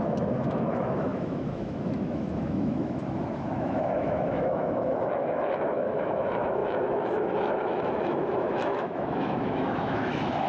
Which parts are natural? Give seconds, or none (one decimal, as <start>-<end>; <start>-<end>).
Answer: none

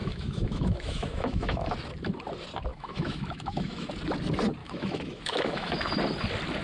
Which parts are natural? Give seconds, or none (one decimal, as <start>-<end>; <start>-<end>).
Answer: 1.7-2.7; 3.9-4.6; 5.9-6.6

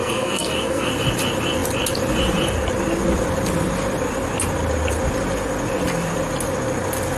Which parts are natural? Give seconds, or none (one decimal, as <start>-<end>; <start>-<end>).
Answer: 0.9-7.2